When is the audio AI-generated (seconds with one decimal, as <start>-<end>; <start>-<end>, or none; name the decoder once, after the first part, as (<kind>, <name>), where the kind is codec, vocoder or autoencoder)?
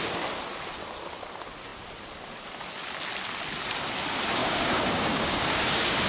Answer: 4.4-6.1 (codec, DAC)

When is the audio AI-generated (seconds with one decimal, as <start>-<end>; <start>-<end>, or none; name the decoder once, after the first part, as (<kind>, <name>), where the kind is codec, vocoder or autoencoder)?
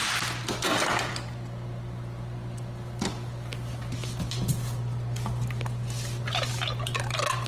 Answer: none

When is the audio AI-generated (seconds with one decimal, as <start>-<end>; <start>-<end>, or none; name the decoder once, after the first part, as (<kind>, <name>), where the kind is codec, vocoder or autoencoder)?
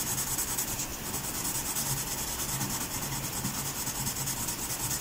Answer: none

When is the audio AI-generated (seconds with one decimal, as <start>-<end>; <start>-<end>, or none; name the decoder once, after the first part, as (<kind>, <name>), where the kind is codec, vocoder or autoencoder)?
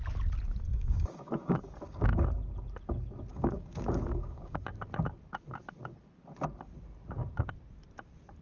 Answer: 0.7-2.2 (codec, DAC); 3.3-4.6